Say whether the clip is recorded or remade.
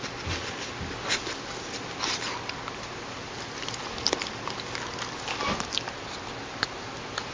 recorded